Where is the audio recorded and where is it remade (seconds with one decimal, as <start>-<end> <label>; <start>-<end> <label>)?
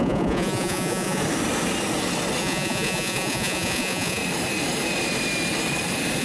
0.0-1.2 remade; 1.2-2.4 recorded; 2.4-4.2 remade; 4.2-6.2 recorded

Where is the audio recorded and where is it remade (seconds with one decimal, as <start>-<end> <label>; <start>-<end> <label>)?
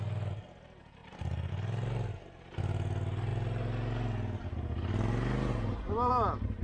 0.0-6.6 recorded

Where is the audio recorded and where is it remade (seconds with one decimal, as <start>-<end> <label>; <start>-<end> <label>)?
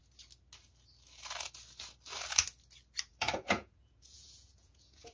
0.0-3.1 recorded; 3.1-5.1 remade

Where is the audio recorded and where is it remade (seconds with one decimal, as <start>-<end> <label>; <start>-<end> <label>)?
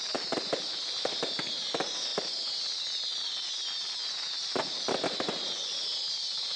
0.0-6.6 recorded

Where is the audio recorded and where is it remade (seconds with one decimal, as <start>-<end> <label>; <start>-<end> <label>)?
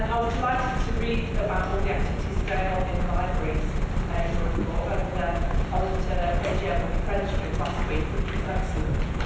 0.0-1.7 recorded; 1.7-2.2 remade; 2.2-5.0 recorded; 5.0-5.5 remade; 5.5-9.3 recorded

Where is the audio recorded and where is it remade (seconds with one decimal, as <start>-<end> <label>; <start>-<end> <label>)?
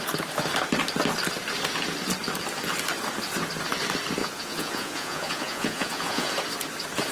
0.0-4.2 recorded; 4.2-6.3 remade; 6.3-7.1 recorded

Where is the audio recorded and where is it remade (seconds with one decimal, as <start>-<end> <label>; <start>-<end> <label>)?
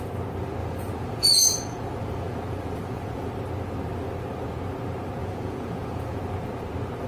0.0-0.6 recorded; 0.6-3.3 remade; 3.3-5.2 recorded; 5.2-6.2 remade; 6.2-7.1 recorded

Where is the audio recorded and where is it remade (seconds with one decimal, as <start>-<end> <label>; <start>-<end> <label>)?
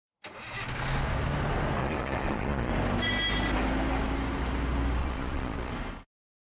0.0-1.8 recorded; 1.8-2.7 remade; 2.7-5.0 recorded; 5.0-5.7 remade; 5.7-6.6 recorded